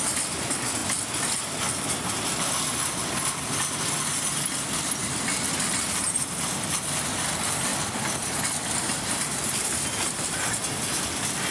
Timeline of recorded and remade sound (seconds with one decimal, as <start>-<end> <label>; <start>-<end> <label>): 0.0-0.8 remade; 0.8-5.8 recorded; 5.8-7.7 remade; 7.7-8.9 recorded; 8.9-11.5 remade